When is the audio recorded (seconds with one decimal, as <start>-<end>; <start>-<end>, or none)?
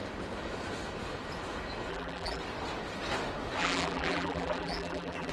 0.0-1.9; 2.4-3.6